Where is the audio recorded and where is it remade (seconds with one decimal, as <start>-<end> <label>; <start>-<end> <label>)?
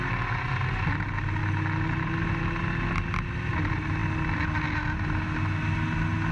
0.0-6.3 recorded